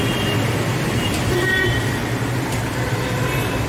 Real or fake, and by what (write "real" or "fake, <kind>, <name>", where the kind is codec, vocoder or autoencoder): real